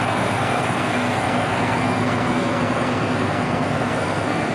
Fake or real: fake